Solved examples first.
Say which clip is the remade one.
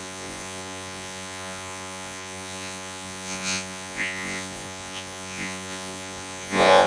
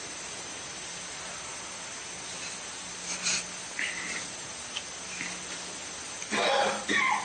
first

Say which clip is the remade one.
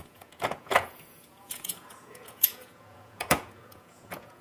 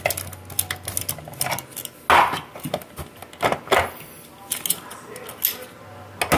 first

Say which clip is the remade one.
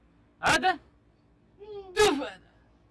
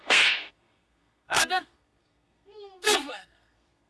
second